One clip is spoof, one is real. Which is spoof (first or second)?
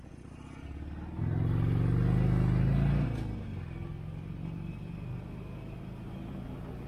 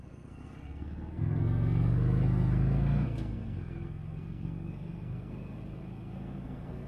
second